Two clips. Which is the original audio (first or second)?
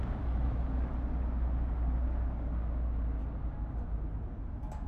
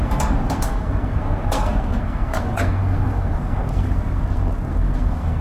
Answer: first